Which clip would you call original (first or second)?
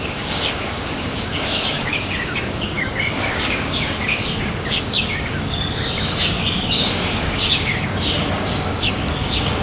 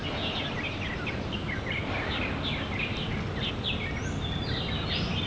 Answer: second